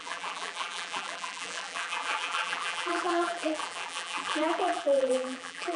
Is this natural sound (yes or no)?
no